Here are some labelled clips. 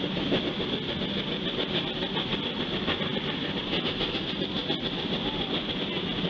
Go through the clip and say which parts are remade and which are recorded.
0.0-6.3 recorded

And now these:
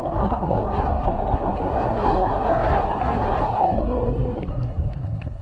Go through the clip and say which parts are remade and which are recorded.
0.0-5.4 remade